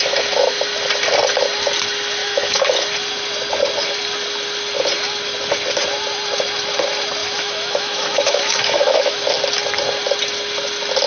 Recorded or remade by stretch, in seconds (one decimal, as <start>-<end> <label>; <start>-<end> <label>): 0.0-2.2 recorded; 2.2-2.7 remade; 2.7-7.2 recorded; 7.2-9.2 remade; 9.2-11.1 recorded